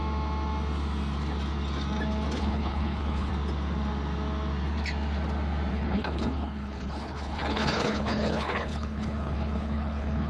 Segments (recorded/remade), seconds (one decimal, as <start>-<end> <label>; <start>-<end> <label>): 0.0-2.4 recorded; 2.4-3.3 remade; 3.3-5.7 recorded; 5.7-10.3 remade